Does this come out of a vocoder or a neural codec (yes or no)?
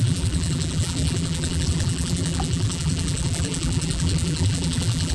yes